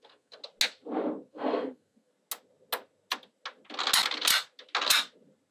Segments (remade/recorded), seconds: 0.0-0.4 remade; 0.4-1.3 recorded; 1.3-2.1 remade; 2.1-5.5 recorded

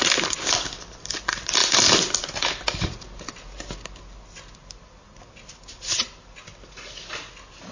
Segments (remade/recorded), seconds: 0.0-7.7 recorded

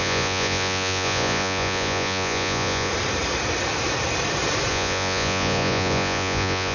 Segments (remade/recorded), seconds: 0.0-2.9 remade; 2.9-4.7 recorded; 4.7-6.7 remade

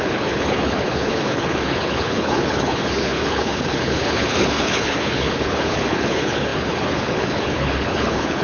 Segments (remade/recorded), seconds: 0.0-8.4 remade